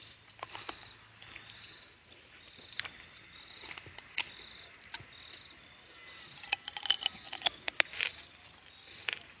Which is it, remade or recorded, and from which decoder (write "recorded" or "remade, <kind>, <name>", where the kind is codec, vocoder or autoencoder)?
recorded